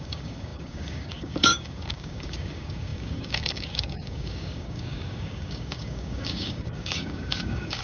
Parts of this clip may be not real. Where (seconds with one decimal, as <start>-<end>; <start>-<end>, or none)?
0.0-7.8